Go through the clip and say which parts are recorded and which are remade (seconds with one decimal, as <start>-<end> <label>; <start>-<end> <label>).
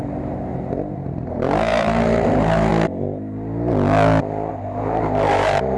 0.0-0.5 remade; 0.5-1.1 recorded; 1.1-2.7 remade; 2.7-4.5 recorded; 4.5-5.8 remade